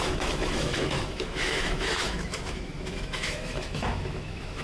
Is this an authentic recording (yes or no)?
no